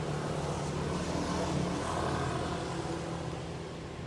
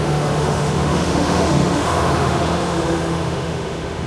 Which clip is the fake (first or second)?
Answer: second